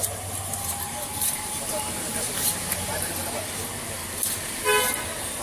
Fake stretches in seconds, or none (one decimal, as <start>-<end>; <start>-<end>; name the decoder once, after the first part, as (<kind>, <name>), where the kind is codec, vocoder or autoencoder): 0.0-3.1 (vocoder, BigVGAN v2)